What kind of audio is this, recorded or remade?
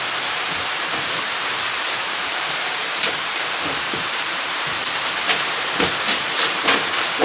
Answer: remade